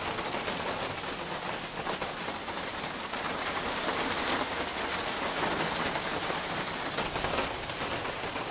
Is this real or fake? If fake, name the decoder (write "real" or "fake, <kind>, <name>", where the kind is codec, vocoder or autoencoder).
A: real